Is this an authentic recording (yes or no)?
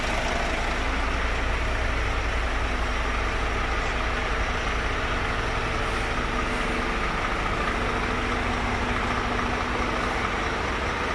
yes